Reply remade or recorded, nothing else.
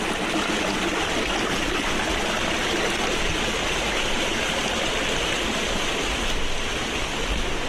recorded